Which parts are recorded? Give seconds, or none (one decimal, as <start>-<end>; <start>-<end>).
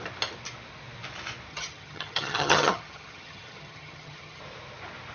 0.0-1.5; 4.4-5.1